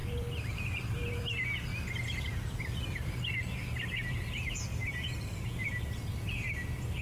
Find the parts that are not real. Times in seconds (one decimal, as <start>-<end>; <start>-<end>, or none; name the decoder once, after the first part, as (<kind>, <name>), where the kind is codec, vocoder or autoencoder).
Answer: 0.0-1.2 (vocoder, BigVGAN v2); 4.7-6.1